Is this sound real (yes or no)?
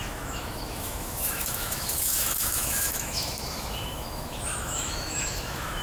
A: no